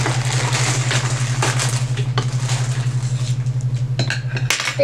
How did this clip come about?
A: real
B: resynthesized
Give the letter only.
A